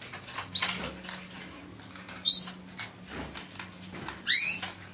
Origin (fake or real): real